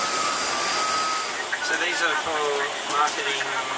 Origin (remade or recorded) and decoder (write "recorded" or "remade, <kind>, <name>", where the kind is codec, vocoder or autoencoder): recorded